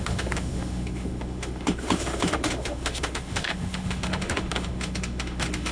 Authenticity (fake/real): fake